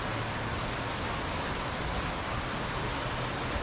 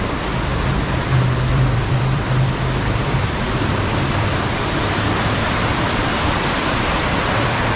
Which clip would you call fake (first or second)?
second